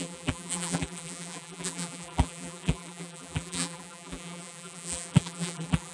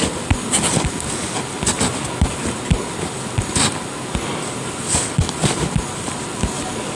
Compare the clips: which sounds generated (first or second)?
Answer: first